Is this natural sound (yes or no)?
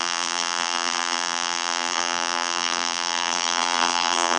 no